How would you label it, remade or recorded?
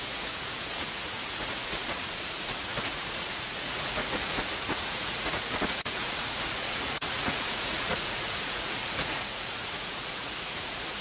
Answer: remade